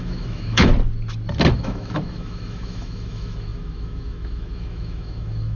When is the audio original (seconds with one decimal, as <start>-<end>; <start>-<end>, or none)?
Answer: 0.7-1.5